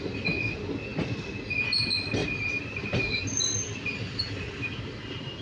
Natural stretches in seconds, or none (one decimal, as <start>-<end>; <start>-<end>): 0.0-2.2; 3.2-5.4